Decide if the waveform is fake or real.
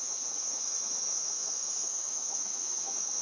fake